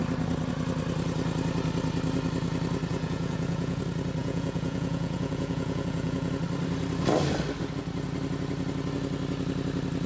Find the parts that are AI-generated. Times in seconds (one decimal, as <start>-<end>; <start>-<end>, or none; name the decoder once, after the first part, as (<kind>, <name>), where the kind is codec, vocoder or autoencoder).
2.9-3.8 (vocoder, Vocos); 4.2-6.3